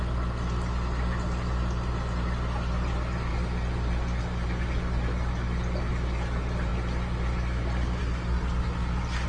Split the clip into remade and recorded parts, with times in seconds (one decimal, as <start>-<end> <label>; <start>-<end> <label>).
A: 0.0-9.3 recorded